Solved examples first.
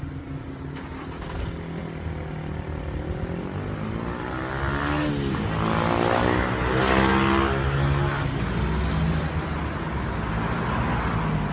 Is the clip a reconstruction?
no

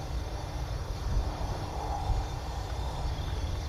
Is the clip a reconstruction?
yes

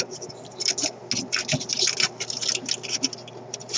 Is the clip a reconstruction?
no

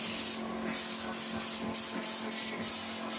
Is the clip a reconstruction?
no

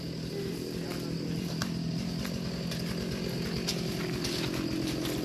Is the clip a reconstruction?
no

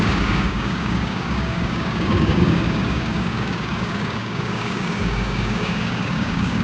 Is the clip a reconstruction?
yes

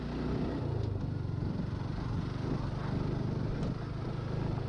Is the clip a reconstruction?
no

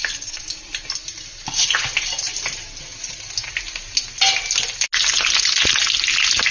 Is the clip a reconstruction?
no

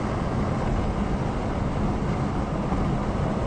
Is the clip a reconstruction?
no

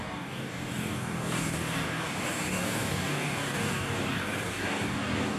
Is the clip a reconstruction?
yes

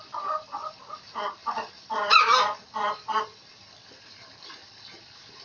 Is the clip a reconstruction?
no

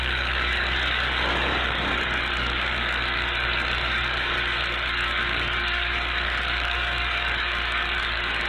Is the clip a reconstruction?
yes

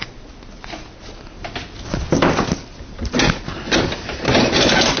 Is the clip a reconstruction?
no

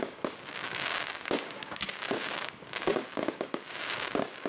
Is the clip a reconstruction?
yes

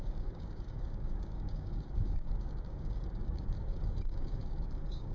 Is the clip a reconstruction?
yes